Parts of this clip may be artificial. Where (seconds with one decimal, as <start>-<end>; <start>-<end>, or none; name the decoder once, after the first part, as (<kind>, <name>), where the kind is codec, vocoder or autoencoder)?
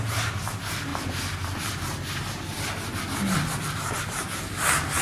none